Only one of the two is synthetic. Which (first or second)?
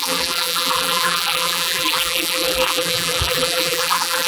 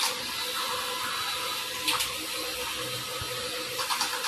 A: first